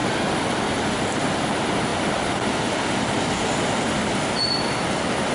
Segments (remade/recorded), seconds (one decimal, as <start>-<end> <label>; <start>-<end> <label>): 0.0-5.3 recorded